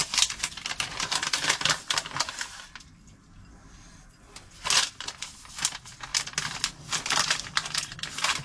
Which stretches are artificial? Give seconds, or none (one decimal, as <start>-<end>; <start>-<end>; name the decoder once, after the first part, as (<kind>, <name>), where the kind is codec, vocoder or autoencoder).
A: 0.0-8.4 (vocoder, BigVGAN v2)